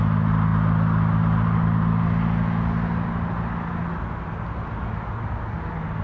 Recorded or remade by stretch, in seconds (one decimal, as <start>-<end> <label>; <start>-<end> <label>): 0.0-6.0 recorded